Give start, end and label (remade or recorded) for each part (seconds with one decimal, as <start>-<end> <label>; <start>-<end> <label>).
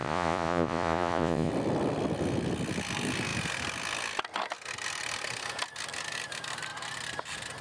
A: 0.0-1.5 remade; 1.5-7.6 recorded